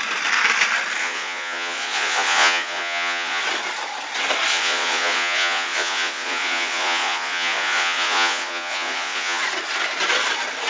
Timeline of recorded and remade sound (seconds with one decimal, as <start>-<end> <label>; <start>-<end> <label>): 0.0-1.0 recorded; 1.0-3.4 remade; 3.4-4.5 recorded; 4.5-9.4 remade; 9.4-10.7 recorded